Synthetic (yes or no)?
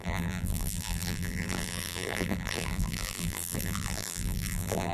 yes